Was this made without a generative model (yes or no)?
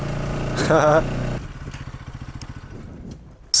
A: yes